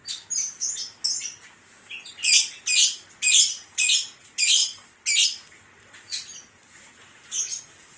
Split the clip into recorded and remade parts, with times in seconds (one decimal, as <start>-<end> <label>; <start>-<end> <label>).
0.0-3.5 recorded; 3.5-4.6 remade; 4.6-5.9 recorded; 5.9-8.0 remade